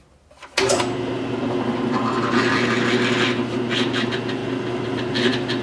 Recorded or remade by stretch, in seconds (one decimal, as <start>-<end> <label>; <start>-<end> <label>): 0.0-5.6 recorded